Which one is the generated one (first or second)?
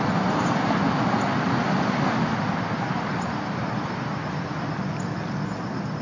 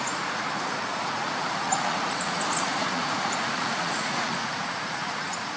second